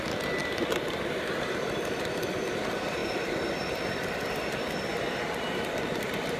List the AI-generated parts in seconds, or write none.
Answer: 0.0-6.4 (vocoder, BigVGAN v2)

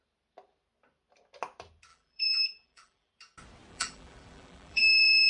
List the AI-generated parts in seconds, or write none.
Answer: 1.9-3.1 (vocoder, BigVGAN v2); 3.7-5.3

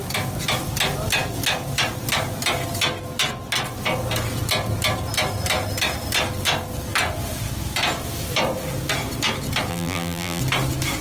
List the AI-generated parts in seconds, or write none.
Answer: 9.7-10.4 (vocoder, BigVGAN v2)

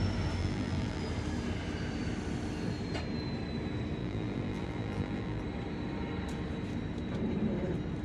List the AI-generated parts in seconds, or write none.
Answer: 0.4-1.0 (vocoder, BigVGAN v2); 4.0-5.4

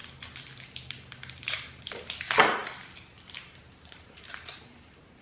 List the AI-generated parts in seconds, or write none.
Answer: 0.6-2.6 (vocoder, BigVGAN v2); 3.4-5.2

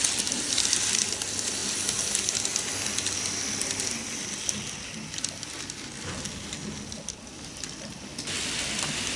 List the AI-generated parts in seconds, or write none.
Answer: none